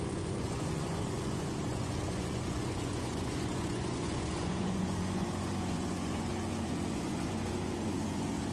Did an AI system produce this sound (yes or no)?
yes